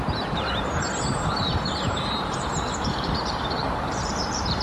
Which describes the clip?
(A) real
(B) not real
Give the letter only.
B